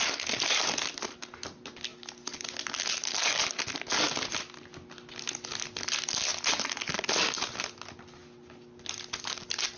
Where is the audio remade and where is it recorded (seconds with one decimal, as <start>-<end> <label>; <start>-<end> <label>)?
0.0-9.8 recorded